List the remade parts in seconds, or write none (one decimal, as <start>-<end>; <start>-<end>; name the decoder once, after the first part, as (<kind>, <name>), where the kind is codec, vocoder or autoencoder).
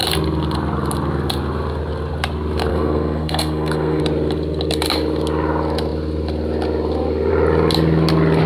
2.7-4.0 (codec, SNAC)